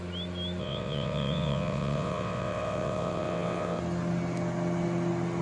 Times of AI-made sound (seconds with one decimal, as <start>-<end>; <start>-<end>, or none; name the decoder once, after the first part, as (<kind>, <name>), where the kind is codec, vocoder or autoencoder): 0.6-3.8 (vocoder, WaveNeXt)